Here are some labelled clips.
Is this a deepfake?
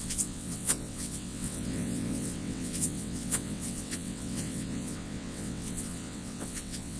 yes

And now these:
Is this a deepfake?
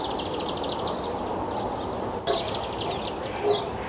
no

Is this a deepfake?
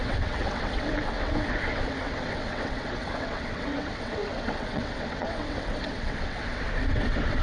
yes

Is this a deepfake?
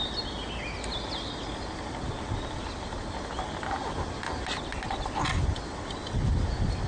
no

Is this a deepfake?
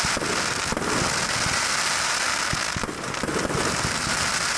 no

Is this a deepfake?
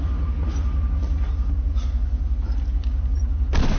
no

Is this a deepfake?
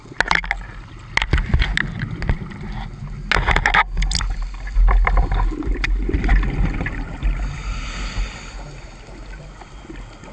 no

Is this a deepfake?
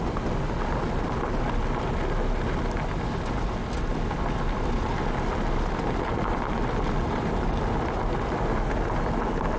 no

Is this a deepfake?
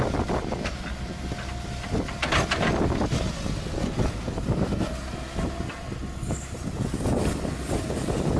no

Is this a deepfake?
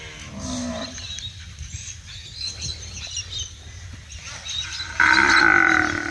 no